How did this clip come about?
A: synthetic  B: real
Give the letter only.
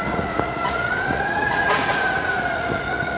A